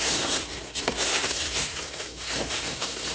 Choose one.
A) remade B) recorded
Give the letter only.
A